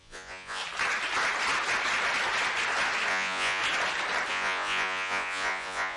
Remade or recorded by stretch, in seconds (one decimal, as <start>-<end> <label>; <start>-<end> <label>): 0.0-0.6 remade; 0.6-3.1 recorded; 3.1-3.6 remade; 3.6-4.3 recorded; 4.3-6.0 remade